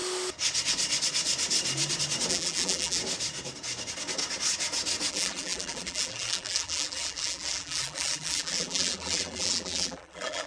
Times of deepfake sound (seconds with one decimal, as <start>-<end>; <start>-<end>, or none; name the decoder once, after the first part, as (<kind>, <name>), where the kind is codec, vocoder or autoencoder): 2.3-3.0 (vocoder, BigVGAN v2); 5.1-10.5